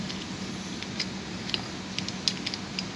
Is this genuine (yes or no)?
yes